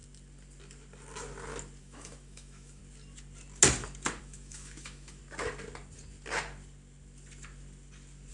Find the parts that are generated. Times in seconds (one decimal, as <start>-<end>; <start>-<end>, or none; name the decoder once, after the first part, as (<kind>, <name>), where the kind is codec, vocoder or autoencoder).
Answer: 1.8-2.8 (autoencoder, DAC-VAE); 4.2-5.2